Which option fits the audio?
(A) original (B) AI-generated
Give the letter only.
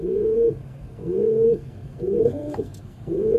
B